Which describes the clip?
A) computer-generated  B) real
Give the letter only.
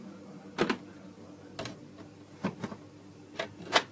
B